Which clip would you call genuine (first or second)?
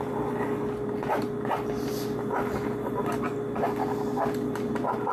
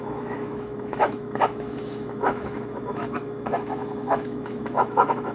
first